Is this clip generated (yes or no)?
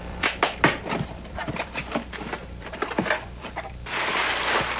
yes